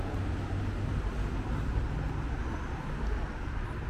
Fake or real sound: real